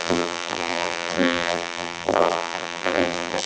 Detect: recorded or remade remade